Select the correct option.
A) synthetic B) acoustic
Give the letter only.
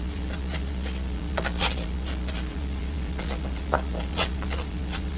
A